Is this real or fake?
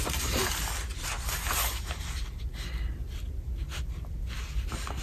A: real